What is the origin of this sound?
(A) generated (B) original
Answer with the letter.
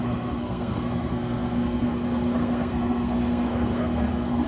A